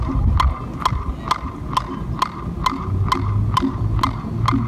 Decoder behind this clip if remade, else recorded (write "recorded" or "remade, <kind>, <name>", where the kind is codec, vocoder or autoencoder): recorded